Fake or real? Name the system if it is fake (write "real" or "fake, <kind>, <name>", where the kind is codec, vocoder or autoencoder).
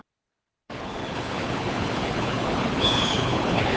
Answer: fake, codec, HILCodec